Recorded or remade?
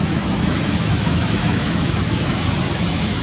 remade